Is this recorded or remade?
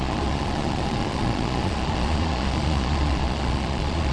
remade